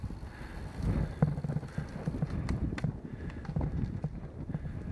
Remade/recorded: recorded